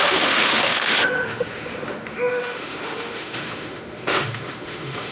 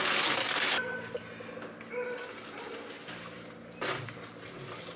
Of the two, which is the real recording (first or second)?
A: second